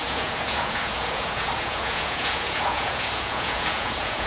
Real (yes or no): no